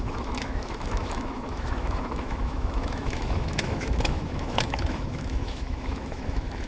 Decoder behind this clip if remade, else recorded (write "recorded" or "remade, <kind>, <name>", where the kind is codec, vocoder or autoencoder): remade, autoencoder, DAC-VAE